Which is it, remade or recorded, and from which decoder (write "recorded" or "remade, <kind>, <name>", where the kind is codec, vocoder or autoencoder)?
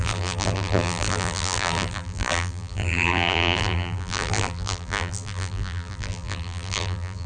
remade, vocoder, BigVGAN v2